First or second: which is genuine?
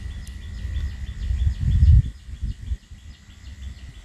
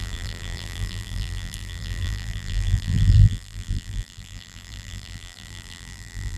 first